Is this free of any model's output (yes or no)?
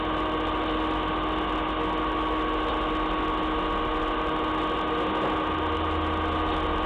yes